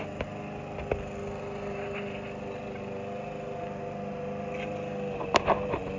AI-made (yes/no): no